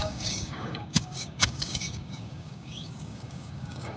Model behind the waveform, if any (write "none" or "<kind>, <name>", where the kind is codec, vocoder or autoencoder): codec, DAC